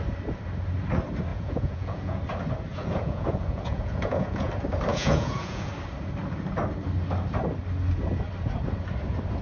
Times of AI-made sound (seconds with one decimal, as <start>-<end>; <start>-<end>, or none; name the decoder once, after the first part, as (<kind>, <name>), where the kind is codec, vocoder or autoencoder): 1.3-2.2 (vocoder, Vocos); 2.7-4.5; 4.9-5.7